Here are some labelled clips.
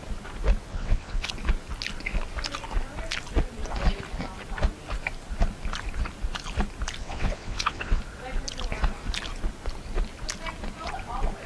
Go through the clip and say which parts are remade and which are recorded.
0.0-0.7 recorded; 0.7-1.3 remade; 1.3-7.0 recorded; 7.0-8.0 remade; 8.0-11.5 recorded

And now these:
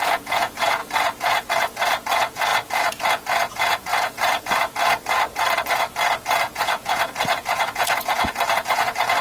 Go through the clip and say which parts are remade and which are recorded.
0.0-9.2 remade

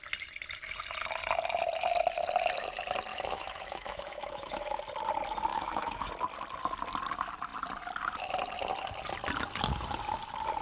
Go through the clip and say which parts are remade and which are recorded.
0.0-3.1 recorded; 3.1-4.8 remade; 4.8-5.5 recorded; 5.5-6.1 remade; 6.1-10.6 recorded

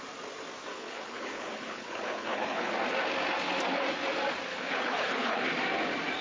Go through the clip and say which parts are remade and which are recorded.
0.0-0.7 recorded; 0.7-2.7 remade; 2.7-4.5 recorded; 4.5-5.5 remade; 5.5-6.2 recorded